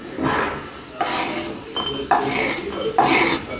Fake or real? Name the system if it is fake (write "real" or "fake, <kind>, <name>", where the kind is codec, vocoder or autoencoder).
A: real